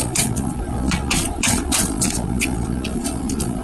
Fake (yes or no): yes